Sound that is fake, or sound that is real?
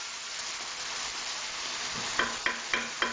real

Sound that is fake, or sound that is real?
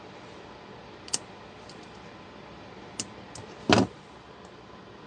real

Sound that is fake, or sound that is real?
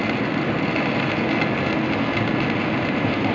real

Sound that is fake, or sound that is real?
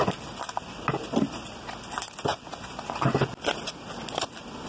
real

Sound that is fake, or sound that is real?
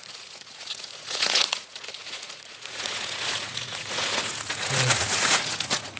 fake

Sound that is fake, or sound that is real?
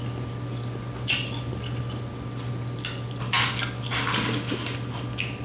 real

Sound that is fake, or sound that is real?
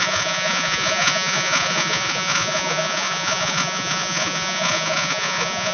fake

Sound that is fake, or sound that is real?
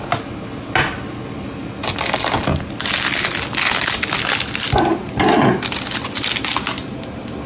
real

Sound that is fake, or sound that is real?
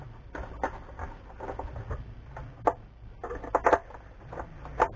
real